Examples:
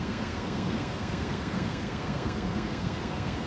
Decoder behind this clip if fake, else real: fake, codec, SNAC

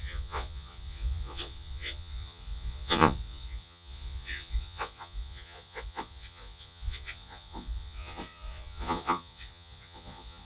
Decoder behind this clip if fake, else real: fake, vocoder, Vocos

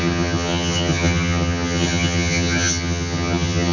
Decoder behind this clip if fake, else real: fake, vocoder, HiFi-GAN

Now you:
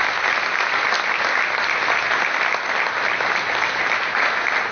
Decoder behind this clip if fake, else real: real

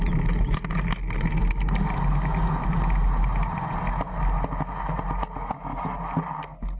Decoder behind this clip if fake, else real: real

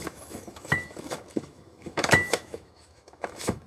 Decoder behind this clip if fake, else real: fake, autoencoder, DAC-VAE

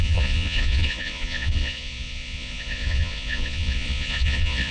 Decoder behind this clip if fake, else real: fake, vocoder, Vocos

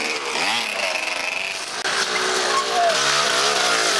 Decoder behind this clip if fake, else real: real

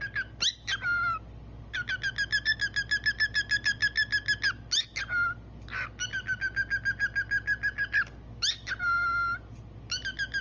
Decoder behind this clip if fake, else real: real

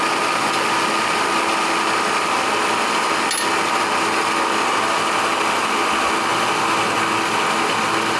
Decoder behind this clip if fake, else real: real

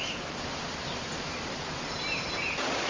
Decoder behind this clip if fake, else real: real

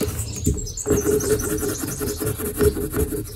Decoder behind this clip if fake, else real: real